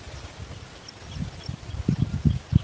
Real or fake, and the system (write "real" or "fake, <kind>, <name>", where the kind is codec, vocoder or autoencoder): real